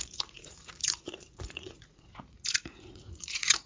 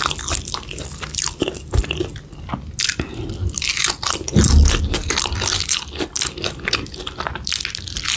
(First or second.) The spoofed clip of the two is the first